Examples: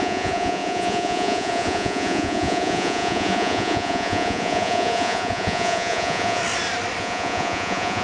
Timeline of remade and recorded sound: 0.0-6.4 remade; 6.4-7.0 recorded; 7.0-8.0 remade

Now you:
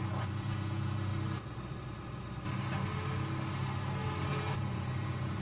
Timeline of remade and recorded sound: 0.0-1.1 remade; 1.1-4.3 recorded; 4.3-5.4 remade